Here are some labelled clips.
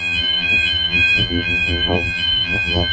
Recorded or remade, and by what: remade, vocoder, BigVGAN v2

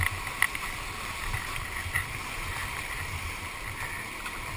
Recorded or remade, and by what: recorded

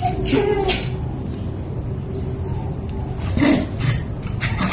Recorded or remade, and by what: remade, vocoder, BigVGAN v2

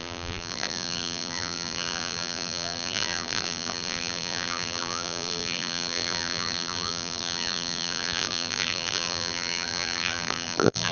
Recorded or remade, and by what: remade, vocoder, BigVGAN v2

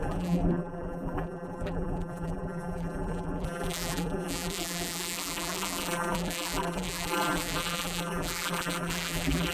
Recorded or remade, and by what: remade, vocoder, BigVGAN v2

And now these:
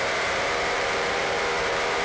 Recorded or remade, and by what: remade, vocoder, BigVGAN v2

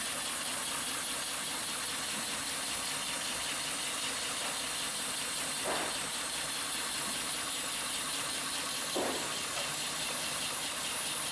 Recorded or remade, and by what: recorded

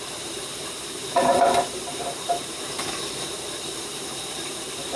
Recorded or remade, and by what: remade, vocoder, BigVGAN v2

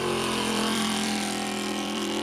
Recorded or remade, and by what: remade, vocoder, BigVGAN v2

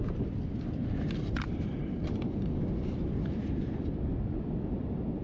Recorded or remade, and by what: remade, vocoder, BigVGAN v2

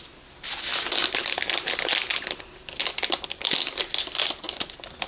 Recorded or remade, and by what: recorded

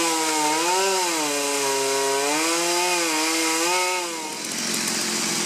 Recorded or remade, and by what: recorded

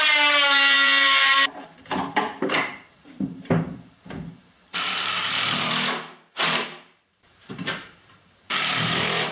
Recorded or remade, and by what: remade, vocoder, BigVGAN v2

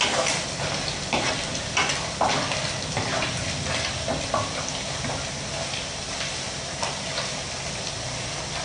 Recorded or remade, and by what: recorded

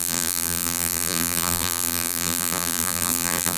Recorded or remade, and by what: remade, vocoder, BigVGAN v2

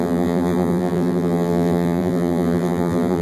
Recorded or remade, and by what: remade, vocoder, BigVGAN v2